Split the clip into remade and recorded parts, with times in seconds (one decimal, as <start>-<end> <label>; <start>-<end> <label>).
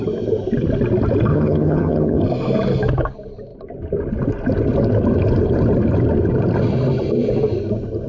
0.0-1.3 recorded; 1.3-2.2 remade; 2.2-8.1 recorded